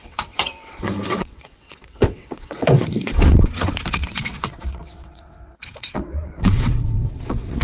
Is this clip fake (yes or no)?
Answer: yes